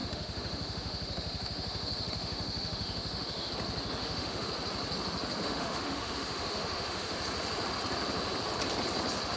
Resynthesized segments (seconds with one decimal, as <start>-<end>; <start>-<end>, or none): 0.0-3.5; 4.0-4.5; 5.4-7.2